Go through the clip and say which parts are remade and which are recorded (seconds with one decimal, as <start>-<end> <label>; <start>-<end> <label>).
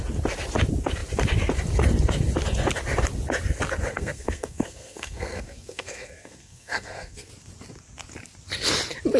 0.0-3.9 recorded; 3.9-7.3 remade; 7.3-9.2 recorded